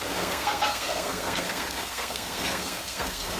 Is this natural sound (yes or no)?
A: no